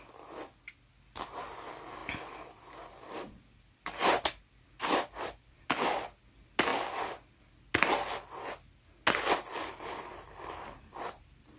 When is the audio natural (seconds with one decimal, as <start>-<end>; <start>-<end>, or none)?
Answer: 0.0-2.0; 5.6-6.7; 7.4-9.5